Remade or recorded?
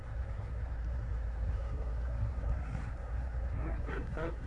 remade